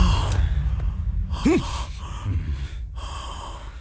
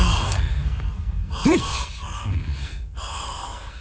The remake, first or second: second